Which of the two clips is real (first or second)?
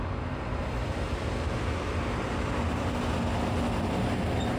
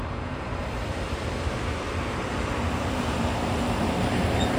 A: first